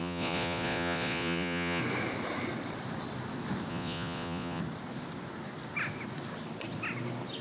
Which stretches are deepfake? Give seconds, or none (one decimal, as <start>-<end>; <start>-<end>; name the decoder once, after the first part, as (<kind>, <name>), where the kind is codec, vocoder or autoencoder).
0.0-1.8 (vocoder, Vocos); 3.7-4.6